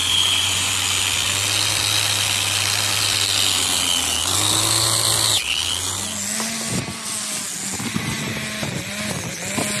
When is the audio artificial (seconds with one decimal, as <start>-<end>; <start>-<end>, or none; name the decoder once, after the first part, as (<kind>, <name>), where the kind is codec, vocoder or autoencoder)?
0.0-0.7 (vocoder, Vocos)